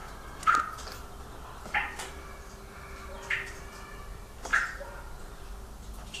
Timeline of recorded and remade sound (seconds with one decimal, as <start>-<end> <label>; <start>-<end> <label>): 0.0-4.5 recorded; 4.5-5.5 remade; 5.5-6.2 recorded